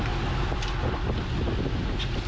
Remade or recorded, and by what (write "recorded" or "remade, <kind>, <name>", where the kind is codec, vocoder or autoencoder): recorded